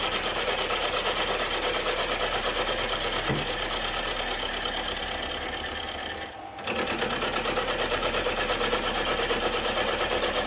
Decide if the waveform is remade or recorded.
recorded